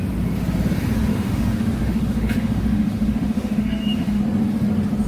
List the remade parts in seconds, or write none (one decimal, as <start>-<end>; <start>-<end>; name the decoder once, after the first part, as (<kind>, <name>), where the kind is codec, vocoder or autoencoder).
1.1-4.2 (autoencoder, DAC-VAE)